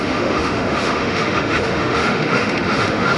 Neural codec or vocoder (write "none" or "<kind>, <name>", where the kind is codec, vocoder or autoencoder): autoencoder, DAC-VAE